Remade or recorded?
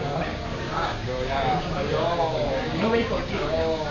remade